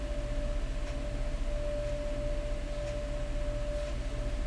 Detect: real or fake real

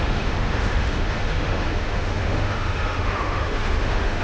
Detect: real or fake fake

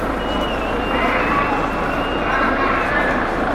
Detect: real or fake real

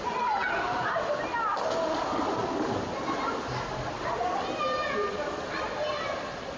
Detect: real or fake real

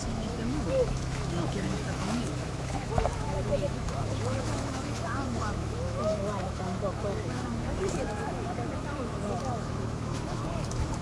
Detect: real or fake fake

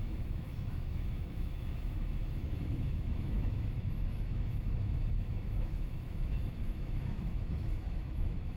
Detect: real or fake fake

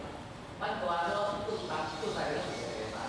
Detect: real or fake real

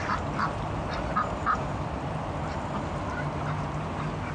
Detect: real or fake real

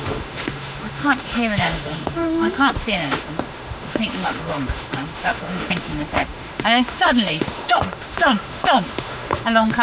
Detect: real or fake fake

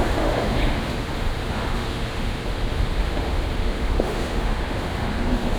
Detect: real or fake fake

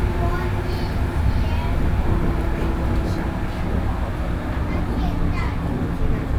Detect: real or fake real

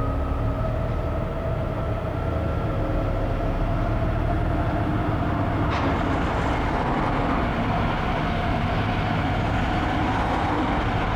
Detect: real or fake real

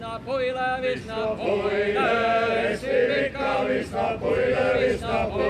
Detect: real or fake real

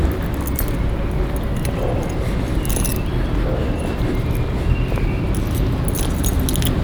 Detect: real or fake real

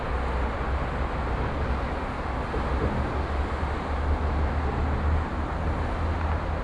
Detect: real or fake real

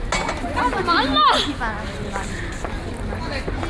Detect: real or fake real